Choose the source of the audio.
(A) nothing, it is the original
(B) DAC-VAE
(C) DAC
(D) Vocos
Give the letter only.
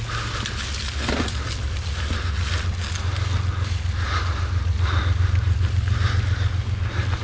A